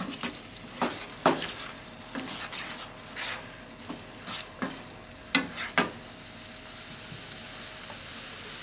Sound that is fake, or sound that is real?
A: real